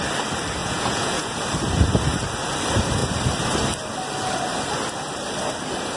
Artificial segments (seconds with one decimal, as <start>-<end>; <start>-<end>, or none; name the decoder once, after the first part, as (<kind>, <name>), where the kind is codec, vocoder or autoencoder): 0.6-1.4 (vocoder, Vocos)